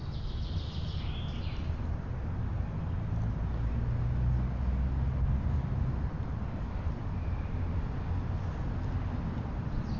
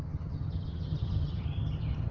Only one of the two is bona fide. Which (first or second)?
first